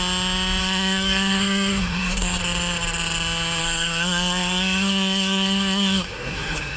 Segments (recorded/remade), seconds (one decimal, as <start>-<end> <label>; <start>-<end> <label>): 0.0-0.6 recorded; 0.6-2.4 remade; 2.4-3.6 recorded; 3.6-6.8 remade